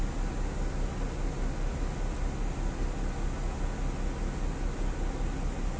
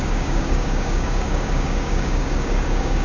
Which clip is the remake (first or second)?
second